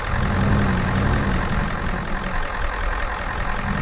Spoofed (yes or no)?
no